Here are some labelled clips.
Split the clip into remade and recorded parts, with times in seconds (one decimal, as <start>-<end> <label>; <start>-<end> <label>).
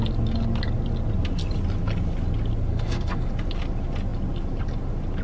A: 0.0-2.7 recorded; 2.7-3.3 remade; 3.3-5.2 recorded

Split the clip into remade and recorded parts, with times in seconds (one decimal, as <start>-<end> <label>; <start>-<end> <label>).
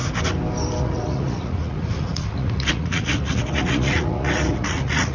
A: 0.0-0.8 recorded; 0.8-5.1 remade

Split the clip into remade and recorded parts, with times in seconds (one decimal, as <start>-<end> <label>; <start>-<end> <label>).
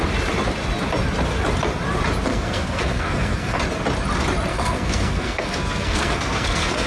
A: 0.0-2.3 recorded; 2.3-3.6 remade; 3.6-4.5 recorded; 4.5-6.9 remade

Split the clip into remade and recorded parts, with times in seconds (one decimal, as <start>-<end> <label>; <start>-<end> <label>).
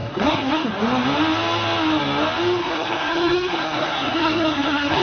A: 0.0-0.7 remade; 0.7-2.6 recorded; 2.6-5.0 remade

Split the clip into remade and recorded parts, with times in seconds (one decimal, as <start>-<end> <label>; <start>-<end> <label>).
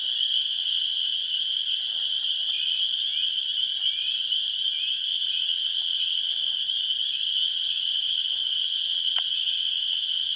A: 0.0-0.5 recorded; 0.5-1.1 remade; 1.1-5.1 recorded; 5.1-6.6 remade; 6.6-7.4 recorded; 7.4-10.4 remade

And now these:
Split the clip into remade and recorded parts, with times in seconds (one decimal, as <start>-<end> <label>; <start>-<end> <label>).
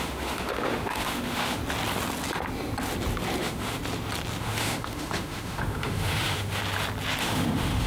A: 0.0-1.6 remade; 1.6-3.4 recorded; 3.4-3.8 remade; 3.8-4.4 recorded; 4.4-6.6 remade; 6.6-7.2 recorded; 7.2-7.9 remade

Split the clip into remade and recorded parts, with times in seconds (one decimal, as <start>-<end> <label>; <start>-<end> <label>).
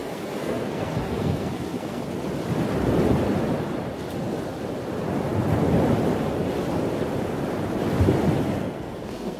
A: 0.0-2.0 remade; 2.0-8.6 recorded; 8.6-9.4 remade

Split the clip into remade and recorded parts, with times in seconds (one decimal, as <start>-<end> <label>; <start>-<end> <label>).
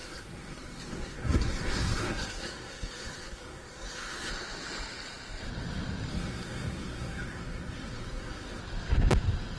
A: 0.0-4.3 remade; 4.3-6.1 recorded; 6.1-8.6 remade; 8.6-9.6 recorded